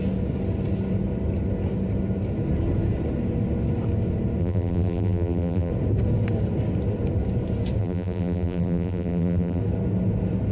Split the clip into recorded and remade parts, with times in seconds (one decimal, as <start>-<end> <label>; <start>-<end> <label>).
0.0-4.4 recorded; 4.4-5.7 remade; 5.7-7.8 recorded; 7.8-9.6 remade; 9.6-10.5 recorded